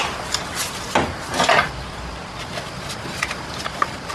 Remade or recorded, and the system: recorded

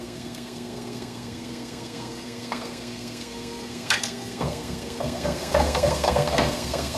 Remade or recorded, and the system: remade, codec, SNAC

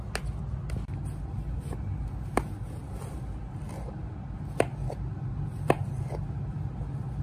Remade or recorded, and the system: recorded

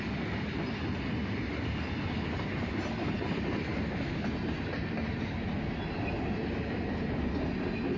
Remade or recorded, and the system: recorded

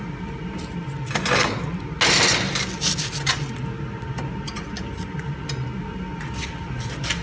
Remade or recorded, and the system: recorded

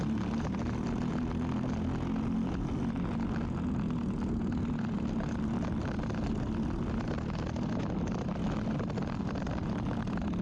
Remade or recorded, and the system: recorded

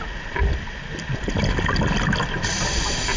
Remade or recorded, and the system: recorded